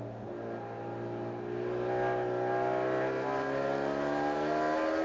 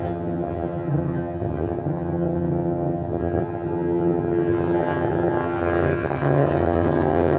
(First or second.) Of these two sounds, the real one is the first